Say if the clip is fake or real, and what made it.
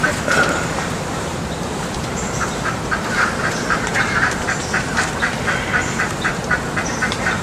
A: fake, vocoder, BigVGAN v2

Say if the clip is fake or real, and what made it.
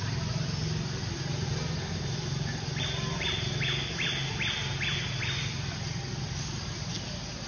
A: real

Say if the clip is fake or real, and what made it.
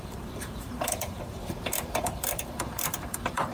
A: fake, vocoder, BigVGAN v2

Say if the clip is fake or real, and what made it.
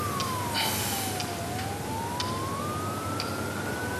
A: real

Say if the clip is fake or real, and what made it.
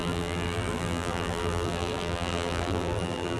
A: fake, vocoder, BigVGAN v2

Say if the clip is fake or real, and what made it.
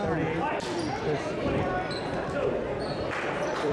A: fake, vocoder, BigVGAN v2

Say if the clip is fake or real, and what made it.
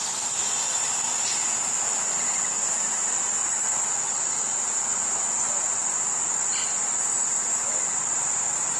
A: real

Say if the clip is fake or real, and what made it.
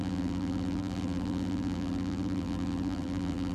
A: fake, vocoder, BigVGAN v2